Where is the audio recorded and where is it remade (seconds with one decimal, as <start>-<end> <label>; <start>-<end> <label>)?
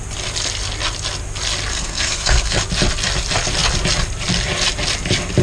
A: 0.0-1.7 recorded; 1.7-2.6 remade; 2.6-5.4 recorded